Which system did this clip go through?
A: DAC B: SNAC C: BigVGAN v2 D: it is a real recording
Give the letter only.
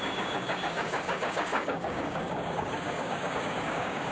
A